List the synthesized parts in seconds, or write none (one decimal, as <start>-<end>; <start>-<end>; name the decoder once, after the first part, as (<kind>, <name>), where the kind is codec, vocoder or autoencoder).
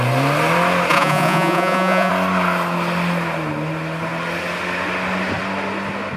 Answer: 0.9-2.1 (vocoder, Vocos)